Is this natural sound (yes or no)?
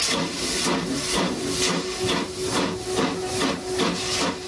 yes